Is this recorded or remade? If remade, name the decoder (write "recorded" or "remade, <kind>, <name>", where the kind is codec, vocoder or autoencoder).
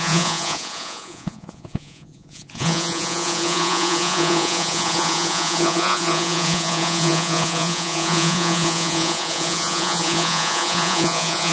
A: remade, vocoder, Vocos